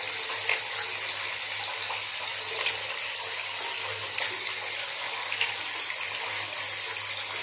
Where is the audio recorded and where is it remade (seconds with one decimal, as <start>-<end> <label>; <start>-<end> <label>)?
0.0-7.4 recorded